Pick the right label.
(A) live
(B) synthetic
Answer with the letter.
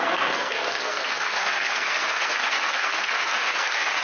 B